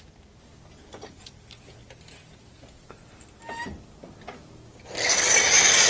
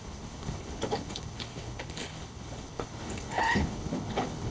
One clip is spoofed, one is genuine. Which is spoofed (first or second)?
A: second